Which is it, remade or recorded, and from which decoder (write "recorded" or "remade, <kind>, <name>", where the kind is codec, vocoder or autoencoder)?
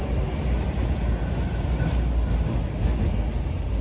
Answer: recorded